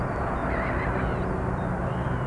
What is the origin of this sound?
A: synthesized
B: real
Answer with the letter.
B